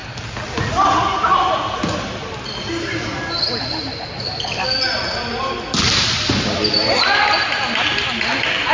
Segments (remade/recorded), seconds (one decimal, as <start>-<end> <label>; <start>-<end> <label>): 0.0-8.7 recorded